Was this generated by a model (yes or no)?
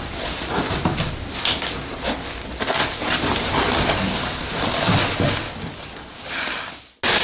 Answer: no